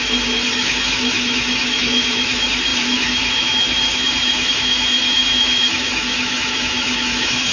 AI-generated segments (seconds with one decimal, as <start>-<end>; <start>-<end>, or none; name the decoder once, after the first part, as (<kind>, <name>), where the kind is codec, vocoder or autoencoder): 0.0-7.5 (autoencoder, DAC-VAE)